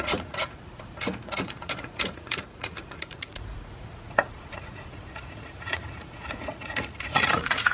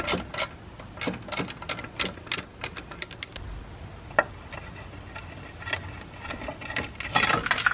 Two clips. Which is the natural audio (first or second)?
second